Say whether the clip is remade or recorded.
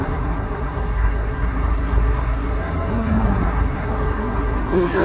remade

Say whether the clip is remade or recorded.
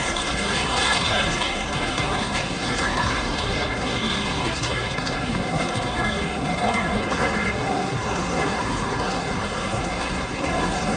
remade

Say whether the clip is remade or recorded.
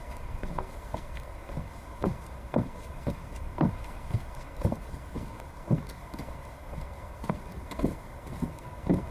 remade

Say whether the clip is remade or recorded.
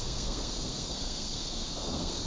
remade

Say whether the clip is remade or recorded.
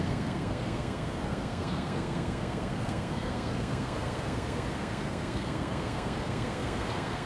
remade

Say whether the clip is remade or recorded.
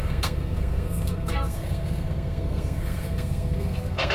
remade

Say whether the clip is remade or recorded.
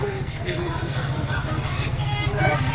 remade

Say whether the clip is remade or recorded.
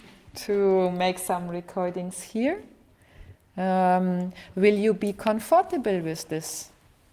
recorded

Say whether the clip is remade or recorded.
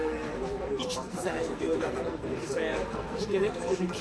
remade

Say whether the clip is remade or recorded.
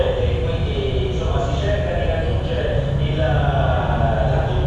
recorded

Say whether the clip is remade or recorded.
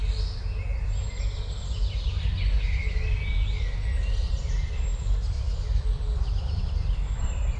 recorded